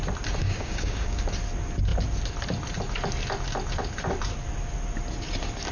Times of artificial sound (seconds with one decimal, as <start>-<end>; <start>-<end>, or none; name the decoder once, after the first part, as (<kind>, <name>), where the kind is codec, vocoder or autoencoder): 0.4-1.2 (codec, DAC)